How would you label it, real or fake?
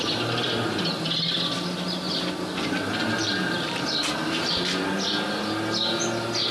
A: real